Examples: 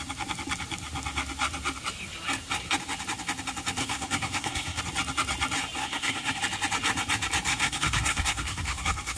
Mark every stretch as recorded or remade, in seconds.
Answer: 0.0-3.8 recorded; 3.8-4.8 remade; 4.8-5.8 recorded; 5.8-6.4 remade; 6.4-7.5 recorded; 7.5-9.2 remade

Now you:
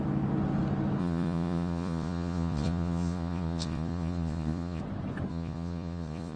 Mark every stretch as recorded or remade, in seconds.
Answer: 0.0-1.0 recorded; 1.0-4.8 remade; 4.8-5.3 recorded; 5.3-6.4 remade

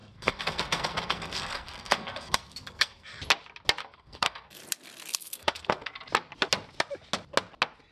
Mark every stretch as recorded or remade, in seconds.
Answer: 0.0-3.2 remade; 3.2-3.8 recorded; 3.8-4.6 remade; 4.6-5.1 recorded; 5.1-5.9 remade; 5.9-7.9 recorded

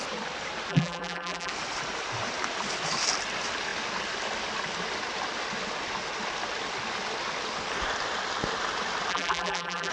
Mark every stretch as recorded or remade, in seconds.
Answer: 0.0-0.7 recorded; 0.7-1.5 remade; 1.5-9.1 recorded; 9.1-9.9 remade

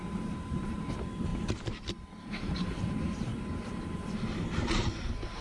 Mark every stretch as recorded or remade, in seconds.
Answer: 0.0-3.3 remade; 3.3-3.8 recorded; 3.8-5.4 remade